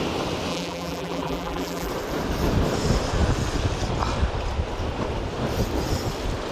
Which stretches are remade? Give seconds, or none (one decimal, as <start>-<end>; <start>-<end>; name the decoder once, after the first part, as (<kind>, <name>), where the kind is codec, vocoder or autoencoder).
0.5-1.9 (vocoder, BigVGAN v2)